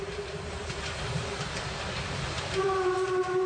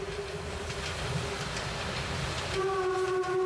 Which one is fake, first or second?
first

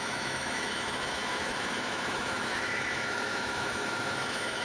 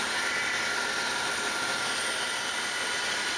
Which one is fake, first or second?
first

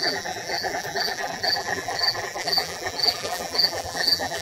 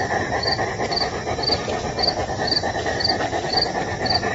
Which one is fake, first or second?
first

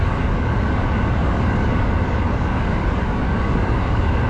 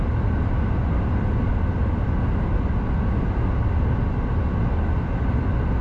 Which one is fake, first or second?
first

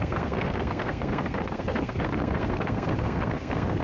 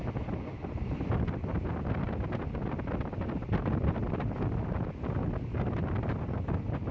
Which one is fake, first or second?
first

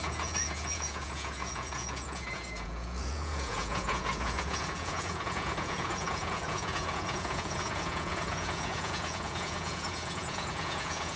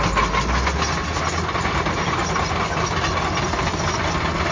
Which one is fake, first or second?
first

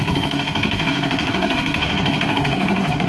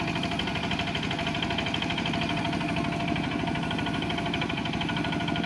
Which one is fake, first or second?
first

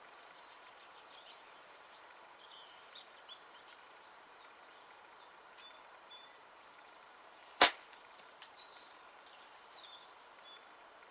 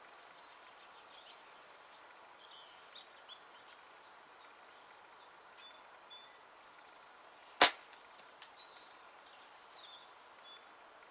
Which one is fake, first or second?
first